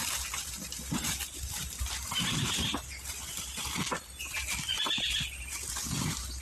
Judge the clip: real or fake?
real